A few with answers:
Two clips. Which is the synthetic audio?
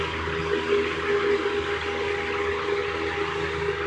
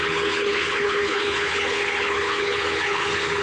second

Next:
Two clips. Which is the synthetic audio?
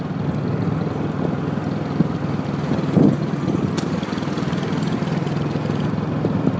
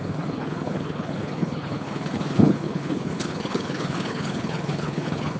second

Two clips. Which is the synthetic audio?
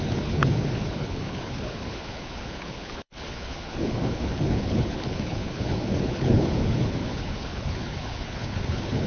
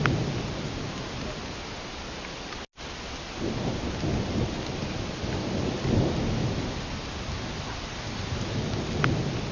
first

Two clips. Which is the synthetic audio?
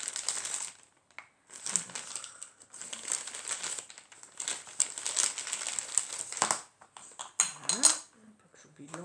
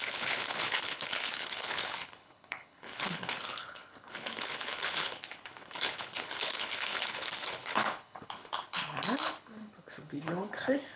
second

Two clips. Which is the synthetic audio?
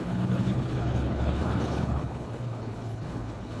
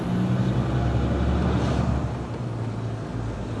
first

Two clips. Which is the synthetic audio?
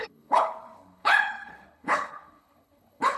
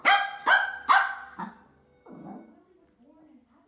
first